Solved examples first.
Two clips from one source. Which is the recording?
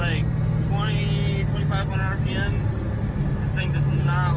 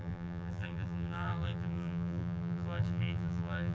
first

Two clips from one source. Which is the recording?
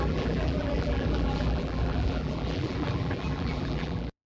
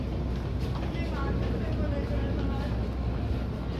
second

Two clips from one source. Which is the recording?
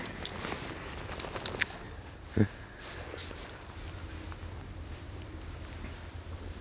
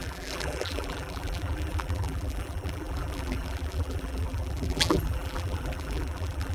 first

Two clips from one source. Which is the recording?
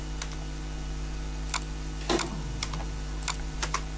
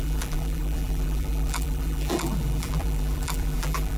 first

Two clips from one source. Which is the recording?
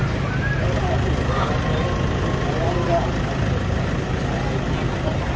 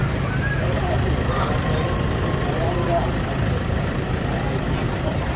first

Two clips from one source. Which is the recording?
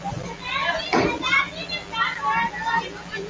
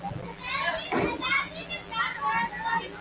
second